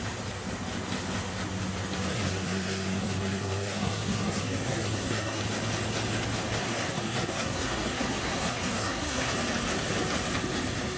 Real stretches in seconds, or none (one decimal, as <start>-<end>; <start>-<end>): 0.0-2.1; 5.4-6.6; 9.3-11.0